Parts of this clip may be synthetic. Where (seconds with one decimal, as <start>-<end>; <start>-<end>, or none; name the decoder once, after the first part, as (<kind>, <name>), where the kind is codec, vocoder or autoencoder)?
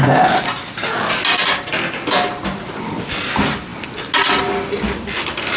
none